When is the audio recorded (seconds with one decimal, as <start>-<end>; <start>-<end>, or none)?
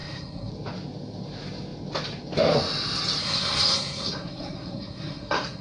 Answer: 0.5-3.2